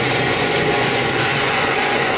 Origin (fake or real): fake